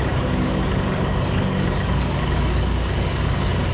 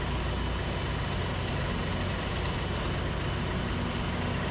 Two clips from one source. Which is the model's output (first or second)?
first